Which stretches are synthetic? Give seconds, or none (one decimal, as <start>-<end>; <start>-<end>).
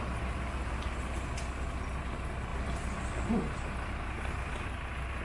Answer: none